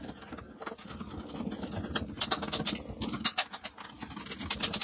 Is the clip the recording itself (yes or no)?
yes